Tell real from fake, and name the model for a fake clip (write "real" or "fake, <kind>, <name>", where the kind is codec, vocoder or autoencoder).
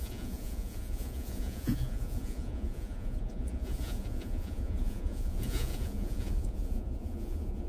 fake, vocoder, Vocos